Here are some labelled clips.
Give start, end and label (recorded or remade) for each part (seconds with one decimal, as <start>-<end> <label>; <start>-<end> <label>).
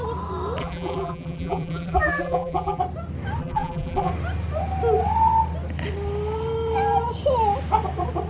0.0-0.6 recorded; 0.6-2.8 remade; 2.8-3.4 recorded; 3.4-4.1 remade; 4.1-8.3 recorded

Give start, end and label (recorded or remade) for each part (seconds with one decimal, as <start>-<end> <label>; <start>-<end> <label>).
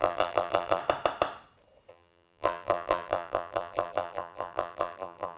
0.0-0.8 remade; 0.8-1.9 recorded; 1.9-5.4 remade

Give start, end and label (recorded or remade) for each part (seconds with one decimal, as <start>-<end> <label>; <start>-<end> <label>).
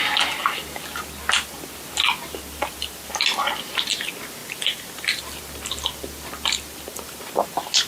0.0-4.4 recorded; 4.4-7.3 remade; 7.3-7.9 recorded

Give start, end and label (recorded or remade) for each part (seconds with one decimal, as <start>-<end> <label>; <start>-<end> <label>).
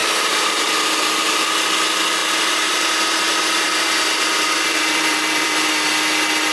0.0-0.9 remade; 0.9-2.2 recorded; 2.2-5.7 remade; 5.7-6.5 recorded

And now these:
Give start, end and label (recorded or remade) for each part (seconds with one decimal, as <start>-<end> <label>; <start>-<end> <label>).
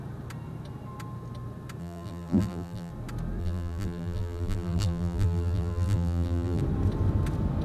0.0-1.8 recorded; 1.8-2.9 remade; 2.9-3.4 recorded; 3.4-6.6 remade; 6.6-7.6 recorded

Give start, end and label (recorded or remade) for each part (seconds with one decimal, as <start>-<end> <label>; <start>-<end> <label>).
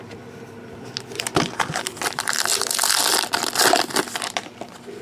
0.0-5.0 recorded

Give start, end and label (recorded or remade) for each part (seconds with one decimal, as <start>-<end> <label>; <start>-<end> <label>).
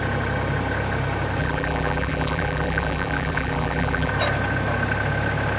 0.0-1.4 recorded; 1.4-4.1 remade; 4.1-5.6 recorded